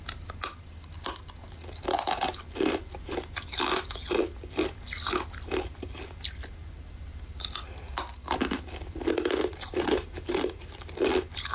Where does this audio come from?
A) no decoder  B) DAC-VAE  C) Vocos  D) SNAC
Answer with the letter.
A